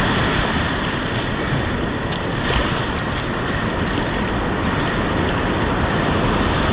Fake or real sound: real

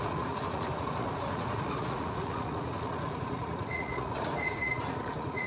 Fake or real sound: fake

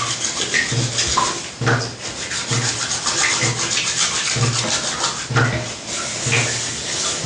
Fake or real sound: real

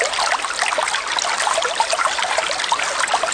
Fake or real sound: fake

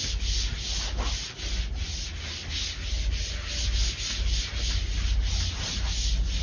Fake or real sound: real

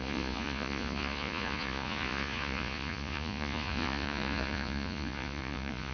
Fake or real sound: fake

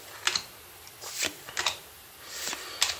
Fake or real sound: real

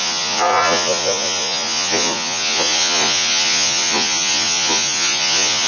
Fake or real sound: fake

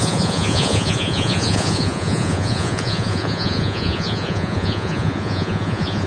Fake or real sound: fake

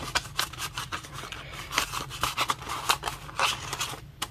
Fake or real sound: fake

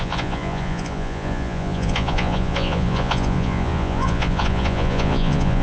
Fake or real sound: fake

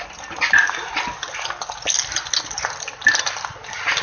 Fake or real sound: real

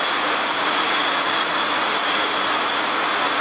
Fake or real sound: fake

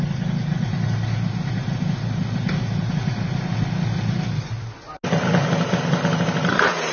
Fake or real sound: real